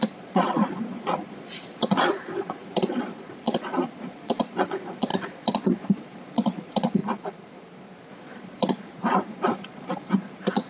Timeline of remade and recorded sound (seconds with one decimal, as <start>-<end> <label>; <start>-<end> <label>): 0.0-7.0 remade; 7.0-8.1 recorded; 8.1-10.7 remade